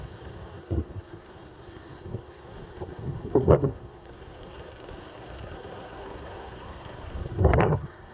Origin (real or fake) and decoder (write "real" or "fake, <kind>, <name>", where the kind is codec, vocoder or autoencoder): fake, codec, SNAC